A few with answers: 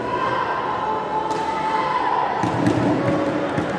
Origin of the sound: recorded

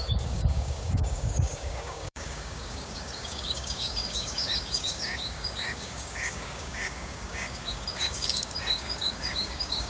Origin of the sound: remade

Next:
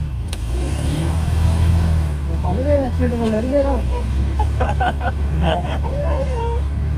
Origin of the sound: remade